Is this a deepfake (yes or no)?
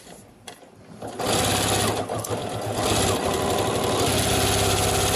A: no